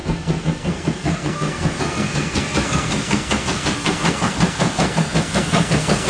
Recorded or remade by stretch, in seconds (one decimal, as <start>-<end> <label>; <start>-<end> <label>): 0.0-6.1 remade

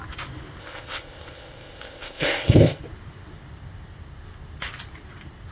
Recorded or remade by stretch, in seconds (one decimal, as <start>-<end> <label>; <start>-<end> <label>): 0.0-0.6 recorded; 0.6-2.8 remade; 2.8-5.5 recorded

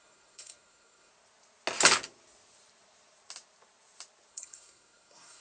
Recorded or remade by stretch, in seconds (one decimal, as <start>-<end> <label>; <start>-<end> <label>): 0.0-1.1 remade; 1.1-4.3 recorded; 4.3-5.4 remade

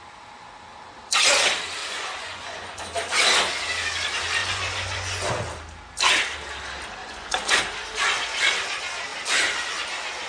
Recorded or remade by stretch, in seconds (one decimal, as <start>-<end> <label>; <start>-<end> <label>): 0.0-1.8 recorded; 1.8-2.8 remade; 2.8-4.4 recorded; 4.4-5.3 remade; 5.3-7.0 recorded; 7.0-7.6 remade; 7.6-10.3 recorded

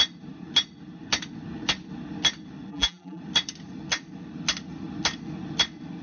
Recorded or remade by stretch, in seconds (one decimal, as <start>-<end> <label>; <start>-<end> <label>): 0.0-2.7 recorded; 2.7-3.2 remade; 3.2-6.0 recorded